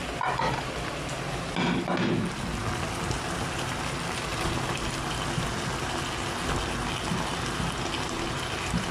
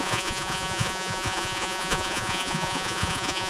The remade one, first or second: second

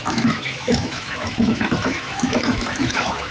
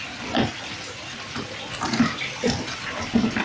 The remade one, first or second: first